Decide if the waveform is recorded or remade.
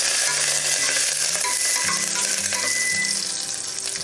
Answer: recorded